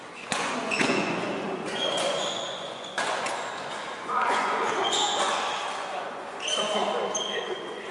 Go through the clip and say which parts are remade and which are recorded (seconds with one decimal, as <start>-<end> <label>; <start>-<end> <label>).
0.0-6.8 remade; 6.8-7.4 recorded; 7.4-7.9 remade

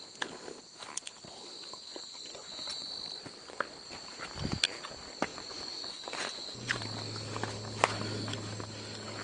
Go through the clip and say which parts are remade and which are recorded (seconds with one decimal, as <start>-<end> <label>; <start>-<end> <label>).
0.0-1.9 recorded; 1.9-2.9 remade; 2.9-5.3 recorded; 5.3-6.8 remade; 6.8-9.2 recorded

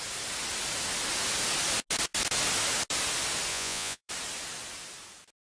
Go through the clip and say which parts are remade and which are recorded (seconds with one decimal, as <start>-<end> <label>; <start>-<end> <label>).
0.0-3.5 recorded; 3.5-4.1 remade; 4.1-5.6 recorded

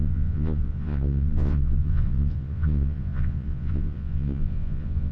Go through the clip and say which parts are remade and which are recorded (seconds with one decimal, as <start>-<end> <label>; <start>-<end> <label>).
0.0-5.1 remade

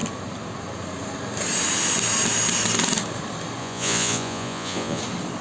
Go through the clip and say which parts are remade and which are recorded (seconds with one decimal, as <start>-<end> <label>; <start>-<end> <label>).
0.0-3.6 recorded; 3.6-5.0 remade; 5.0-5.4 recorded

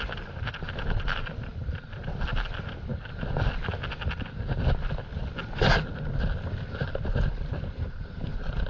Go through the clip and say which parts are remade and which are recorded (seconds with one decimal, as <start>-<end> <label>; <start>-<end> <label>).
0.0-8.7 recorded

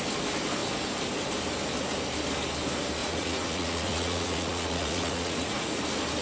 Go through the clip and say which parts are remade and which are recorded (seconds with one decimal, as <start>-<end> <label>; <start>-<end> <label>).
0.0-3.0 recorded; 3.0-5.8 remade; 5.8-6.2 recorded